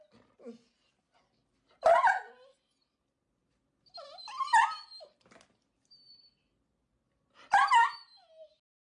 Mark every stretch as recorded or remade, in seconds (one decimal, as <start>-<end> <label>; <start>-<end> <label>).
0.0-9.0 recorded